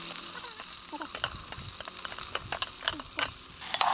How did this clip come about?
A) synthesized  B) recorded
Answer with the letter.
B